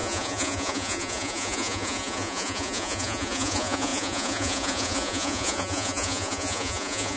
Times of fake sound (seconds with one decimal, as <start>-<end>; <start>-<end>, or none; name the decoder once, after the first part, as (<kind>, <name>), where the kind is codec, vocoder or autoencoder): 0.0-7.2 (vocoder, Vocos)